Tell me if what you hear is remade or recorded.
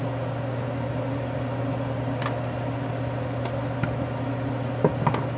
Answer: recorded